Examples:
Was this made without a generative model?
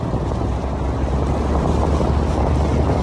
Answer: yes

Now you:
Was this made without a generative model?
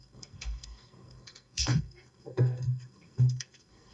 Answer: no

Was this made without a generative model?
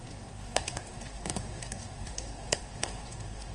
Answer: no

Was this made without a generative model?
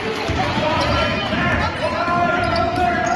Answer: yes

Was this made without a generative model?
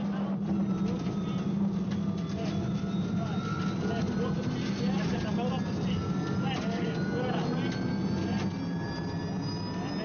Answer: yes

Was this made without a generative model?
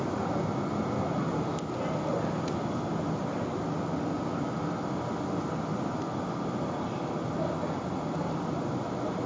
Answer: yes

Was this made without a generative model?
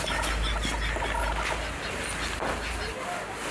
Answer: yes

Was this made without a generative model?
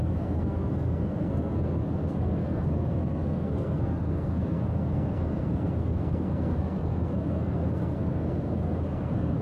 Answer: no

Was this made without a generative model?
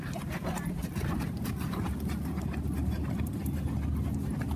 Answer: yes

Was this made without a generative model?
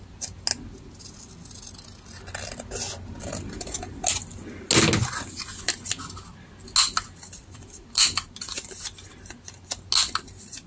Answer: yes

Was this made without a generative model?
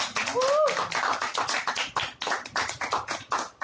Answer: yes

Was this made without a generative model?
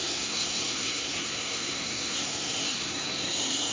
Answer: no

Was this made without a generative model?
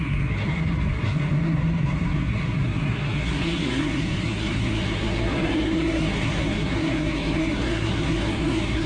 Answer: no